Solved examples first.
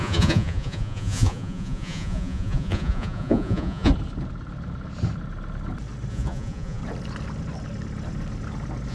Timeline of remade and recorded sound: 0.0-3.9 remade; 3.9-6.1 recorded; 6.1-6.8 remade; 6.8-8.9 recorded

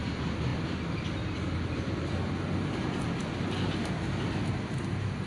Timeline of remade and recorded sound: 0.0-5.3 recorded

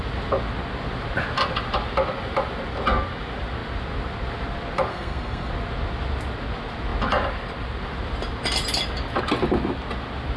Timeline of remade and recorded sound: 0.0-4.9 recorded; 4.9-5.5 remade; 5.5-10.4 recorded

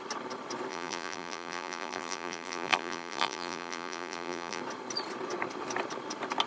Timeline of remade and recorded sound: 0.0-0.7 recorded; 0.7-4.6 remade; 4.6-6.5 recorded

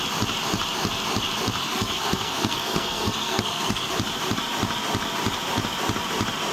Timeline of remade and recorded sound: 0.0-1.6 recorded; 1.6-3.9 remade; 3.9-6.5 recorded